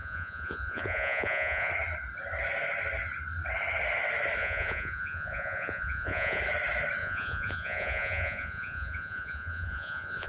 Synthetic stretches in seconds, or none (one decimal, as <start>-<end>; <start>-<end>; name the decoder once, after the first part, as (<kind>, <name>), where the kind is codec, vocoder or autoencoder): 0.0-1.7 (vocoder, Vocos); 4.4-6.4; 7.0-10.3